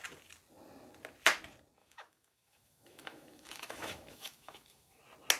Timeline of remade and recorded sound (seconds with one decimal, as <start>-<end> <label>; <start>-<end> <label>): 0.0-1.8 recorded; 1.8-5.0 remade; 5.0-5.4 recorded